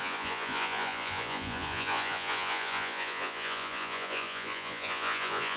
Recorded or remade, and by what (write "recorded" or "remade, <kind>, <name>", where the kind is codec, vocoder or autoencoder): remade, vocoder, Vocos